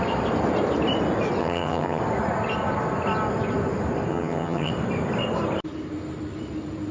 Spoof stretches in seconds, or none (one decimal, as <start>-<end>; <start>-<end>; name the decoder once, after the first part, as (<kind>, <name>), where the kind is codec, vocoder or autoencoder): 1.4-2.0 (vocoder, HiFi-GAN); 4.1-4.7